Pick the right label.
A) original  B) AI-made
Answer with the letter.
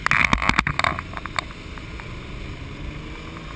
A